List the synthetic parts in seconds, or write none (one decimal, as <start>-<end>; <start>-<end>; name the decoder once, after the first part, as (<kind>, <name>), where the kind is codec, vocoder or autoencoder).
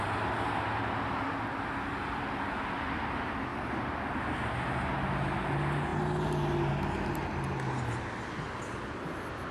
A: none